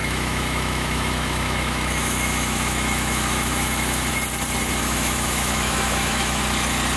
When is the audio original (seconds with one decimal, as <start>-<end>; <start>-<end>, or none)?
4.1-4.8; 6.4-7.0